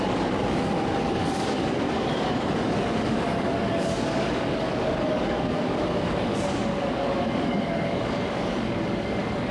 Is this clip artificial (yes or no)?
yes